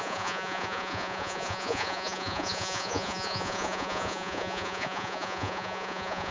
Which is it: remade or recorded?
remade